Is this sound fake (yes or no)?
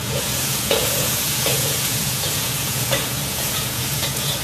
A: yes